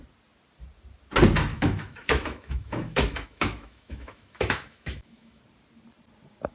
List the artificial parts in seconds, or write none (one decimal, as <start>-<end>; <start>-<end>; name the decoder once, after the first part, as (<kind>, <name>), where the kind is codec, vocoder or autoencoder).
1.5-5.4 (autoencoder, DAC-VAE)